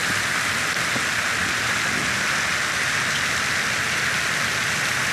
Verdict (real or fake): real